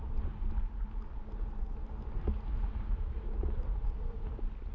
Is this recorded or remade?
recorded